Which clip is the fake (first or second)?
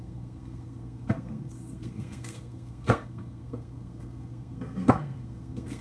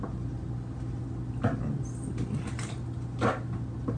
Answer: first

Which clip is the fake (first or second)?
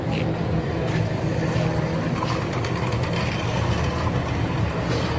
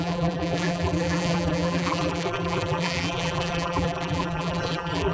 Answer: second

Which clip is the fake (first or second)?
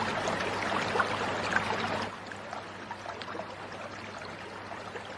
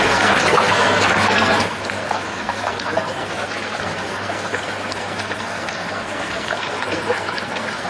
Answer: second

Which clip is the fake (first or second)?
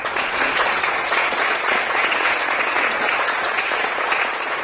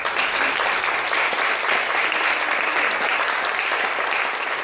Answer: first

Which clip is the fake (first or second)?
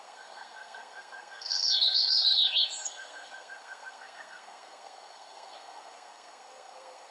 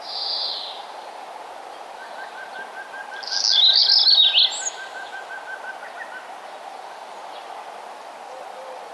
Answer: first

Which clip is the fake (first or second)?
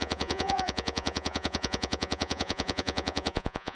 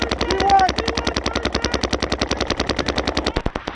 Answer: first